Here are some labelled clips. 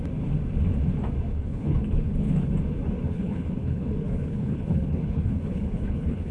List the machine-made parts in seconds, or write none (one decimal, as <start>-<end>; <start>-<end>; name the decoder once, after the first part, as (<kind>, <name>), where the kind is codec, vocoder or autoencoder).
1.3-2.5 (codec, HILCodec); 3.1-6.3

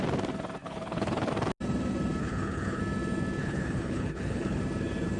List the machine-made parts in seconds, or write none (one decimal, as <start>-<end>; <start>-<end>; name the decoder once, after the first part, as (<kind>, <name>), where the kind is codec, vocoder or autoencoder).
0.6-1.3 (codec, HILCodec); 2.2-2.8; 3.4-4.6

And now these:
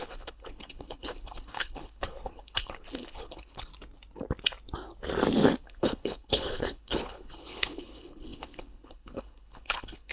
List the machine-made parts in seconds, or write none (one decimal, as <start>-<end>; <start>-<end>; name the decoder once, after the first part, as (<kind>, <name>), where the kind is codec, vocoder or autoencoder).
0.0-3.7 (codec, HILCodec); 5.6-10.1